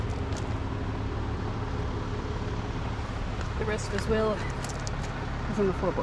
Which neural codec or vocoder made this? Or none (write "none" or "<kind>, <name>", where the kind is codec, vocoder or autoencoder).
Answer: none